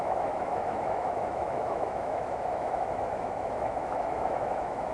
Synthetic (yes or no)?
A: yes